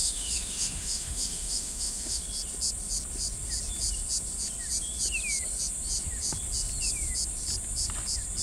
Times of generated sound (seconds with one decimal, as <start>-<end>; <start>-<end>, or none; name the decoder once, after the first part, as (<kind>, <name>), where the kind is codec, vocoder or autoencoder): 0.0-2.2 (autoencoder, DAC-VAE)